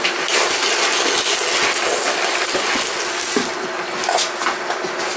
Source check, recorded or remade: recorded